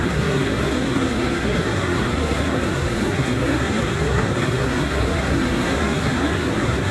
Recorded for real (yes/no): no